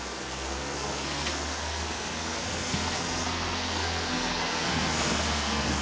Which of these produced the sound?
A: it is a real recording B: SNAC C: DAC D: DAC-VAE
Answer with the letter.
B